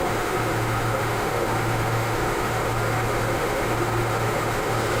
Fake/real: fake